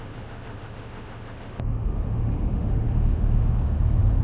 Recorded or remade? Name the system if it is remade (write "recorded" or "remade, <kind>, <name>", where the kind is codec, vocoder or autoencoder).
remade, autoencoder, DAC-VAE